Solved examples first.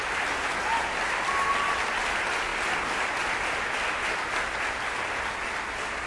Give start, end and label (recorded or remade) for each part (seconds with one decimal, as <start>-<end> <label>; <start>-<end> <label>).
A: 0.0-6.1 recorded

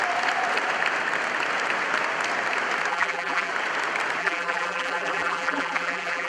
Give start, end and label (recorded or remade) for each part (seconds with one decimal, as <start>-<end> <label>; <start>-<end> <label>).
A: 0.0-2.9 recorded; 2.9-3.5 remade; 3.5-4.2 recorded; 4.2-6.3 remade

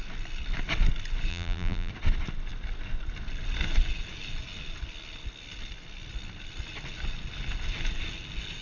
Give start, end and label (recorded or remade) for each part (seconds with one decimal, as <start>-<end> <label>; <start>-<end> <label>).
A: 0.0-1.3 recorded; 1.3-1.9 remade; 1.9-8.6 recorded

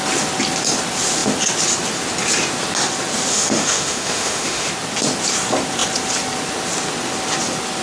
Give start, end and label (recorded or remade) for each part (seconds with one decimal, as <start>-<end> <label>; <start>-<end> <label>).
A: 0.0-3.3 recorded; 3.3-4.7 remade; 4.7-7.8 recorded

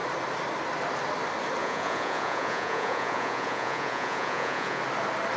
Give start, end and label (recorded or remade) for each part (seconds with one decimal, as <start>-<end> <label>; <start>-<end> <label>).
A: 0.0-1.6 recorded; 1.6-4.8 remade; 4.8-5.4 recorded

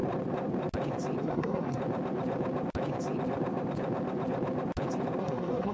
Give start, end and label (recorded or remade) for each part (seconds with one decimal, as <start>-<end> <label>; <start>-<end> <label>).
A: 0.0-1.2 recorded; 1.2-1.8 remade; 1.8-5.2 recorded; 5.2-5.7 remade

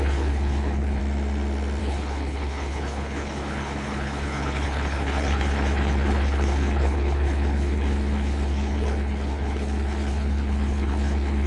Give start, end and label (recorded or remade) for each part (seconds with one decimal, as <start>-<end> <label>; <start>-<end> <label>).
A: 0.0-1.0 remade; 1.0-1.8 recorded; 1.8-11.5 remade